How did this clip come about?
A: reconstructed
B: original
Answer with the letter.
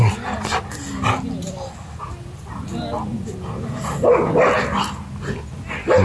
B